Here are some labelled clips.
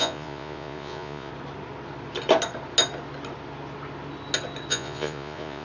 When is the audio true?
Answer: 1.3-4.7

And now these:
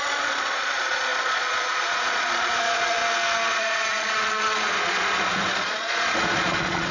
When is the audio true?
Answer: 3.0-3.5

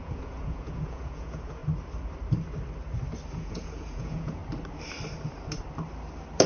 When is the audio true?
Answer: 1.6-3.3; 4.4-6.5

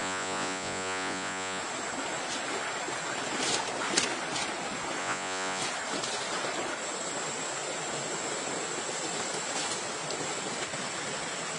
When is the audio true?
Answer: 1.6-5.0; 5.6-11.6